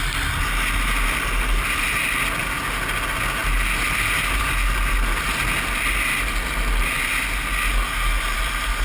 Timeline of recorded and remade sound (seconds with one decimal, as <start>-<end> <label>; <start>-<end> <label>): 0.0-8.8 recorded